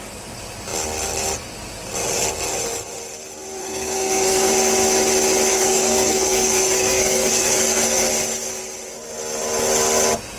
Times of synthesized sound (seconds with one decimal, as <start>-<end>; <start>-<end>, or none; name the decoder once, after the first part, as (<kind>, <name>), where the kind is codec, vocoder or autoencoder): 3.6-4.5 (codec, SNAC); 5.5-8.1